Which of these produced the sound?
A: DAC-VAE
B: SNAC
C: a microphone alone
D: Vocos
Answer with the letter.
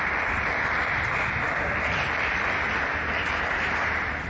C